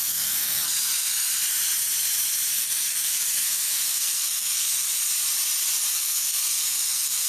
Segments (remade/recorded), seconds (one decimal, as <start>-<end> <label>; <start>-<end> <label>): 0.0-1.1 remade; 1.1-2.5 recorded; 2.5-5.0 remade; 5.0-5.9 recorded; 5.9-7.3 remade